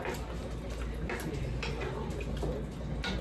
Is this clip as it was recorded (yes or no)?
yes